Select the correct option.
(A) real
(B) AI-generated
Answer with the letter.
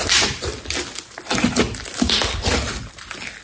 A